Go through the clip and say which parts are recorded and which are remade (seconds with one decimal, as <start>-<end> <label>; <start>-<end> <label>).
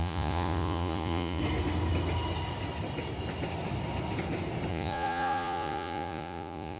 0.0-1.4 remade; 1.4-4.7 recorded; 4.7-6.8 remade